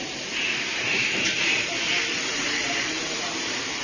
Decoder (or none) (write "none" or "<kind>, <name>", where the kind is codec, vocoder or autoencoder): vocoder, BigVGAN v2